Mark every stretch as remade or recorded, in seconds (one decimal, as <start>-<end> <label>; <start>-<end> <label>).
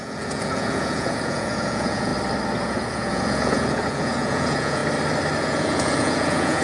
0.0-2.1 remade; 2.1-2.6 recorded; 2.6-4.8 remade; 4.8-5.4 recorded; 5.4-6.6 remade